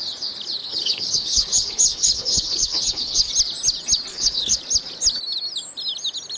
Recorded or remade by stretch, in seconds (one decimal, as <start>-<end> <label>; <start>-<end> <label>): 0.0-0.6 recorded; 0.6-3.3 remade; 3.3-4.1 recorded; 4.1-4.6 remade; 4.6-6.4 recorded